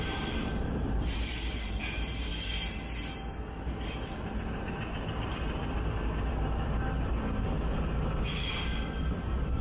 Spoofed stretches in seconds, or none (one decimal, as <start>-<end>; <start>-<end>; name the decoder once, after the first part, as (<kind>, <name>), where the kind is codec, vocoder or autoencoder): 0.0-2.3 (vocoder, BigVGAN v2); 4.2-9.6